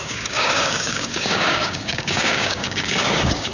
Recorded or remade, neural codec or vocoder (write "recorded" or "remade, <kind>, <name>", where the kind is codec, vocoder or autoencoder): remade, codec, DAC